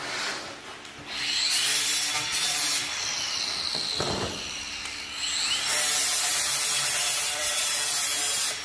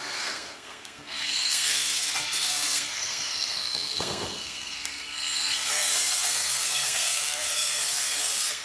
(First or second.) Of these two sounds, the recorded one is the first